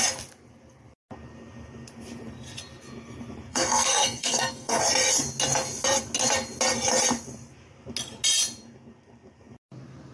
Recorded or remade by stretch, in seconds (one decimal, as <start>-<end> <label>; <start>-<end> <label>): 0.0-3.5 recorded; 3.5-4.8 remade; 4.8-10.1 recorded